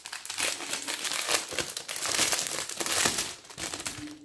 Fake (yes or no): no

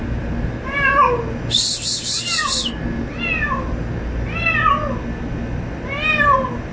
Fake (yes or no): no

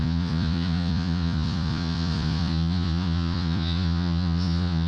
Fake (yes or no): yes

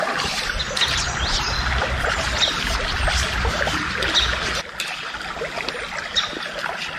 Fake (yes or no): no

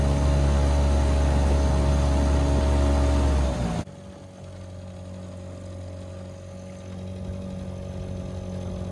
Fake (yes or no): no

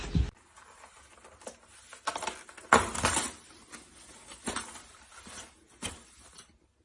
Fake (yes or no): no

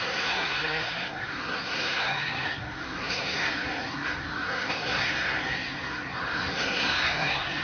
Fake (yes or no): yes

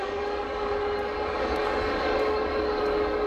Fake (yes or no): yes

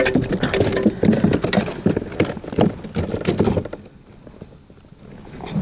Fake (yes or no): no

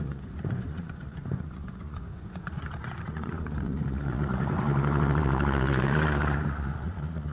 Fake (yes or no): yes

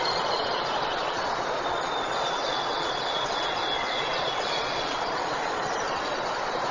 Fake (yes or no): yes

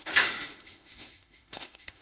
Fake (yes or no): yes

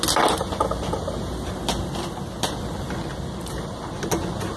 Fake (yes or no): no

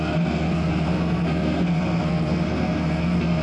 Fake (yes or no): yes